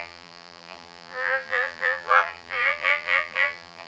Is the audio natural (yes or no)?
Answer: no